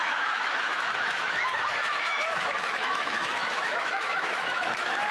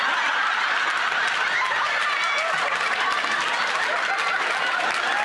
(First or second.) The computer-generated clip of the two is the first